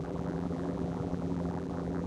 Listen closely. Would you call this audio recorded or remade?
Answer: remade